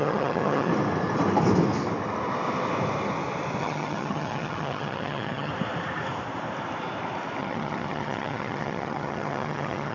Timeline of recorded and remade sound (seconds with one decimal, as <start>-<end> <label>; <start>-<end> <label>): 0.0-0.7 remade; 0.7-3.6 recorded; 3.6-5.5 remade; 5.5-7.4 recorded; 7.4-9.9 remade